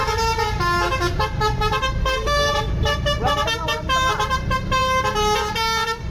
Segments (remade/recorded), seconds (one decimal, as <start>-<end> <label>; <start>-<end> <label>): 0.0-2.0 recorded; 2.0-2.5 remade; 2.5-6.1 recorded

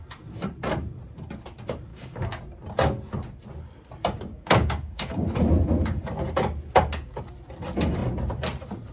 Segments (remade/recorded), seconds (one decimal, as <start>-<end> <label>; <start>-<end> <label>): 0.0-1.9 recorded; 1.9-2.4 remade; 2.4-4.3 recorded; 4.3-5.3 remade; 5.3-8.9 recorded

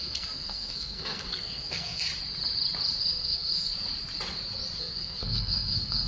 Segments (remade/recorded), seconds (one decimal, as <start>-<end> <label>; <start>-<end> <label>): 0.0-2.1 remade; 2.1-3.0 recorded; 3.0-3.7 remade; 3.7-4.8 recorded; 4.8-6.1 remade

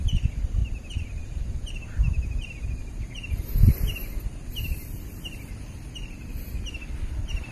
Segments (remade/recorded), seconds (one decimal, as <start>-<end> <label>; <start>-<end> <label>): 0.0-7.5 recorded